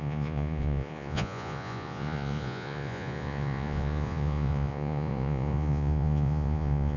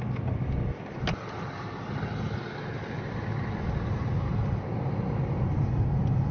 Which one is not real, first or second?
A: first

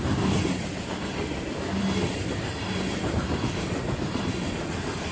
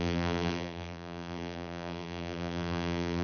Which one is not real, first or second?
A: second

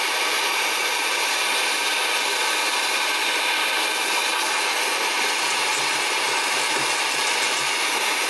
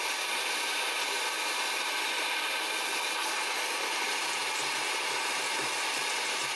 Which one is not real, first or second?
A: second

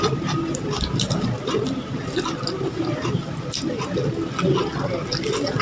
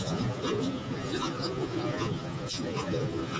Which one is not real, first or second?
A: second